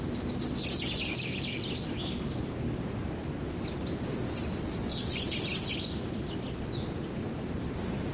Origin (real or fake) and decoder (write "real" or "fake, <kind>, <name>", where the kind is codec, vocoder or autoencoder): real